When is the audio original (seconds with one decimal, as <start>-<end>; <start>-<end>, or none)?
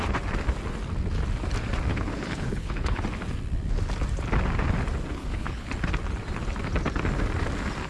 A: 0.0-1.9; 3.0-5.1; 5.7-7.9